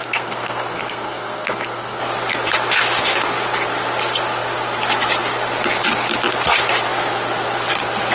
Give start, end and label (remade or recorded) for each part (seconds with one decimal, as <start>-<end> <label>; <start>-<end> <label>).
0.0-2.0 remade; 2.0-8.1 recorded

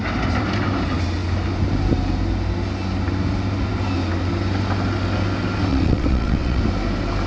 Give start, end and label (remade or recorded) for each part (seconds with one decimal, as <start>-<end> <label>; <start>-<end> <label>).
0.0-5.7 recorded; 5.7-6.6 remade; 6.6-7.3 recorded

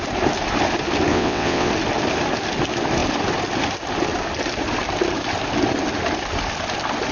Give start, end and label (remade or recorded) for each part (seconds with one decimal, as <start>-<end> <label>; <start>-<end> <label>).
0.0-1.1 recorded; 1.1-1.7 remade; 1.7-7.1 recorded

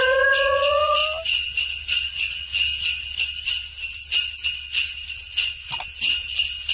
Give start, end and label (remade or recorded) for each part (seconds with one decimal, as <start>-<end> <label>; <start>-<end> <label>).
0.0-1.0 remade; 1.0-2.1 recorded; 2.1-2.5 remade; 2.5-6.7 recorded

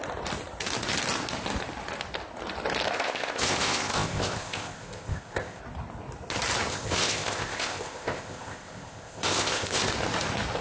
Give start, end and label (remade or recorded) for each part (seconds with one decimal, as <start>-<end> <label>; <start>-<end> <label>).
0.0-2.9 recorded; 2.9-5.6 remade; 5.6-6.7 recorded; 6.7-9.9 remade; 9.9-10.6 recorded

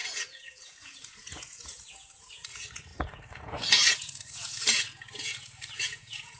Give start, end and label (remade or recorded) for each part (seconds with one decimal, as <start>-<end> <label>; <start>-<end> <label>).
0.0-6.4 remade

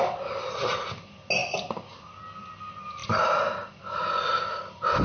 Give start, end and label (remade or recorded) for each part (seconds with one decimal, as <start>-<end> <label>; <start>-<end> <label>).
0.0-5.0 recorded